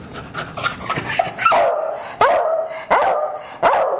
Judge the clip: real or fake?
real